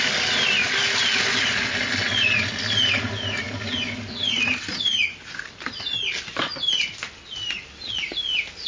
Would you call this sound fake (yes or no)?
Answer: no